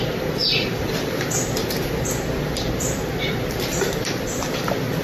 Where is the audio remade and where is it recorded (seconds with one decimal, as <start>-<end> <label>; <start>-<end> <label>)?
0.0-5.0 remade